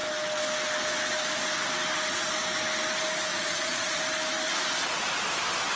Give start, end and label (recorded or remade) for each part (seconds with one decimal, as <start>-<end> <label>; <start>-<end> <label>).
0.0-3.3 recorded; 3.3-4.0 remade; 4.0-5.8 recorded